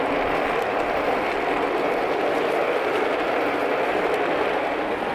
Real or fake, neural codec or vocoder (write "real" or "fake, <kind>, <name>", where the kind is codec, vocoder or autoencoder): real